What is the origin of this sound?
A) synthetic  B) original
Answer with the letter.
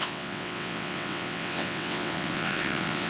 A